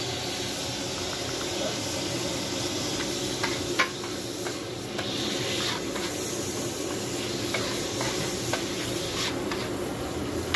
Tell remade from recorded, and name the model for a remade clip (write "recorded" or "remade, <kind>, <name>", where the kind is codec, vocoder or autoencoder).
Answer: recorded